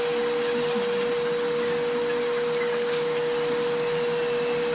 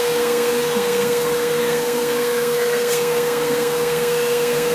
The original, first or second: first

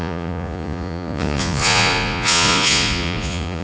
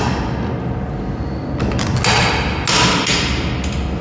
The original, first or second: second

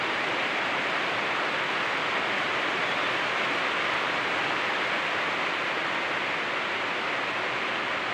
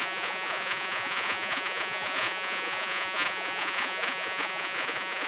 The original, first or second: first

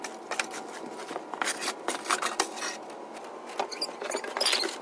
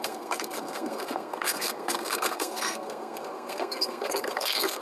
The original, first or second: first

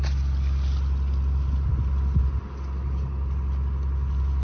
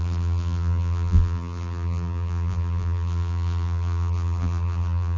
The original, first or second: first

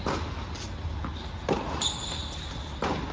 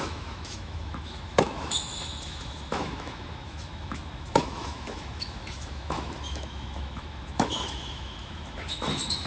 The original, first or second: first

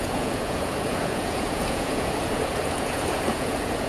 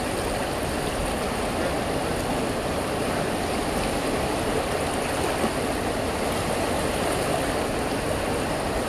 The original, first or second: second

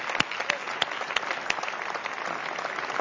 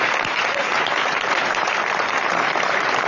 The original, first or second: first